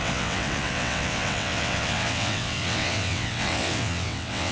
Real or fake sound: fake